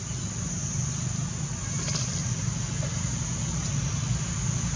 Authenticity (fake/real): real